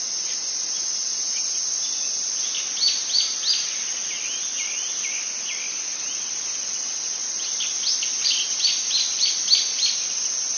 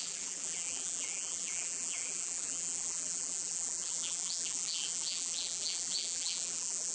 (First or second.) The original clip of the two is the first